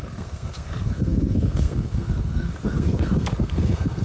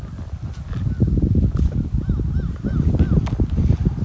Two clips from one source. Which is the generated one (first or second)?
first